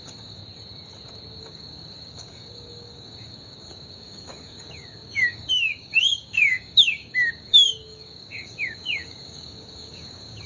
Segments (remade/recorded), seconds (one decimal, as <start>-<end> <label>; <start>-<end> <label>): 0.0-0.4 remade; 0.4-1.4 recorded; 1.4-10.5 remade